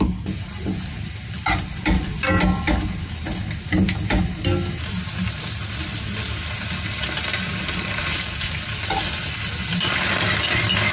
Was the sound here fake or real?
real